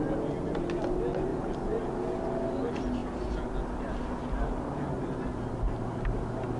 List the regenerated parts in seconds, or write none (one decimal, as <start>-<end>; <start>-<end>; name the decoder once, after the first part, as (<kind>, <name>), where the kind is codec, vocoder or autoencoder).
1.3-1.9 (vocoder, BigVGAN v2)